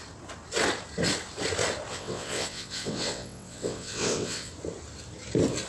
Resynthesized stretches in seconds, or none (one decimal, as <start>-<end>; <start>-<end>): 1.9-4.5